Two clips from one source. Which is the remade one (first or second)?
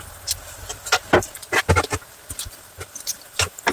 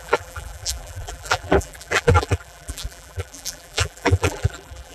second